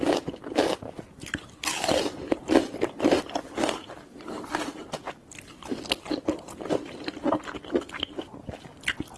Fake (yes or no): no